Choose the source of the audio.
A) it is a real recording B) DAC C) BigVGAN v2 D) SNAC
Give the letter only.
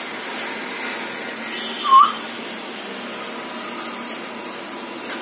A